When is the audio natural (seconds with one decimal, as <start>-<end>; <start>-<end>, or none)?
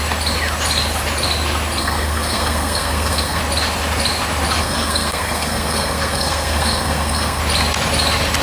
0.0-1.8; 3.4-4.6; 7.4-8.4